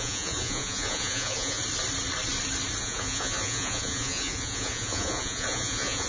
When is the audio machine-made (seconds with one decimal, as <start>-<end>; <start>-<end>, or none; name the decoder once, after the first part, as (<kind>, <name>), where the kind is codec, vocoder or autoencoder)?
0.0-1.6 (vocoder, Vocos); 2.8-6.1